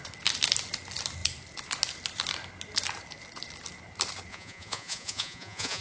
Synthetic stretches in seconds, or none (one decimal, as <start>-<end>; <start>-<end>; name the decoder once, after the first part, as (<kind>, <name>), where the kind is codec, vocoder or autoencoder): 4.3-5.8 (vocoder, Vocos)